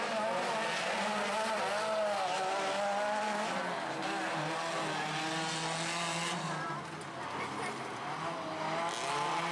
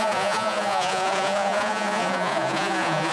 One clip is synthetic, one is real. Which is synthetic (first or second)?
second